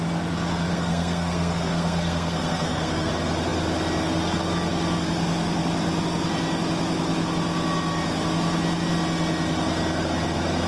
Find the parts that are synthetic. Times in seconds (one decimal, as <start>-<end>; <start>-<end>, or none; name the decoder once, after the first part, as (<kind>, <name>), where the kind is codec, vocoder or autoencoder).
0.7-3.1 (codec, SNAC)